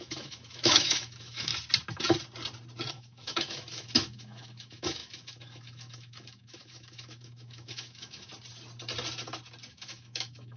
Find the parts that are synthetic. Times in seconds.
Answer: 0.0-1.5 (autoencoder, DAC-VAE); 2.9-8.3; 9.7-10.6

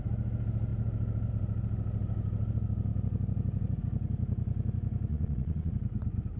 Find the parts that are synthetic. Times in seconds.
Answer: 5.1-5.7 (vocoder, Vocos)

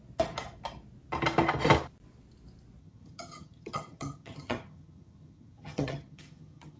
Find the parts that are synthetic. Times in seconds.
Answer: 2.8-6.8 (vocoder, HiFi-GAN)

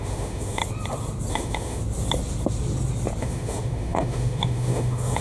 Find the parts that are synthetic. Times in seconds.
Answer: 0.0-0.6 (autoencoder, DAC-VAE); 1.3-1.8; 3.2-5.2